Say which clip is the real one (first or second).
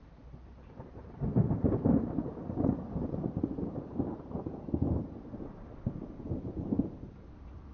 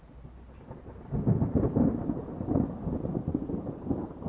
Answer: second